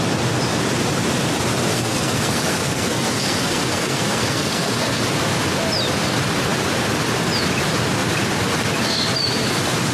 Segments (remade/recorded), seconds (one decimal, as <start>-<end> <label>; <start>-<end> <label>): 0.0-1.7 recorded; 1.7-5.0 remade; 5.0-9.9 recorded